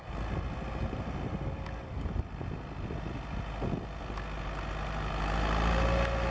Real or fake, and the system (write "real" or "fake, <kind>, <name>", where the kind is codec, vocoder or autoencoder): real